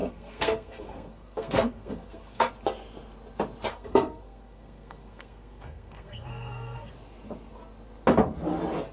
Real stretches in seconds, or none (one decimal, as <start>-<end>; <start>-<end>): 2.5-3.7; 6.9-8.9